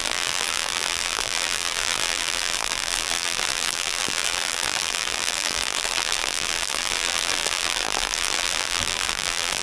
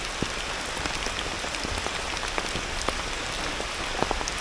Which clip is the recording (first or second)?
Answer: second